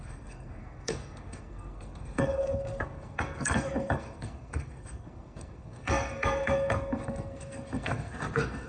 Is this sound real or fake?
fake